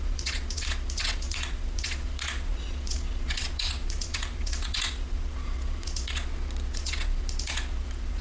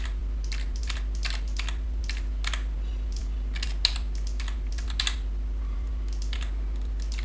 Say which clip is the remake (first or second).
first